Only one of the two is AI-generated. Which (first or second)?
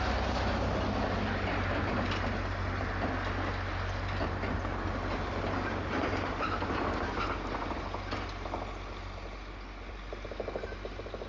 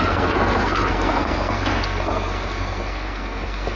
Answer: second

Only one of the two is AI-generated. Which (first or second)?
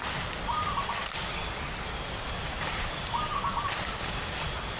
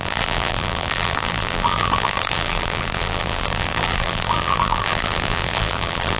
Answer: second